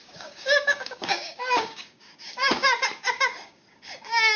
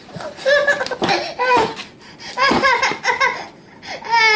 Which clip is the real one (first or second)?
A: second